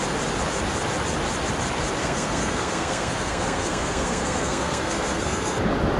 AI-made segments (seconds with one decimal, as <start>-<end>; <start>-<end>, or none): 2.0-5.6